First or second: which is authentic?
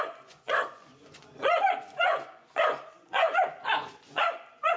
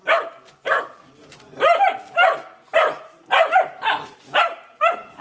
second